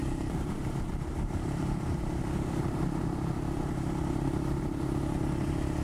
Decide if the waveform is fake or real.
fake